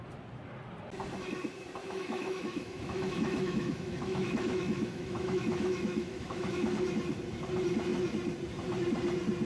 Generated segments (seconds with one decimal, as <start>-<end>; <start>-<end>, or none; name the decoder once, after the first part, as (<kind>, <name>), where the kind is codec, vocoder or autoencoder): 1.8-6.7 (autoencoder, DAC-VAE)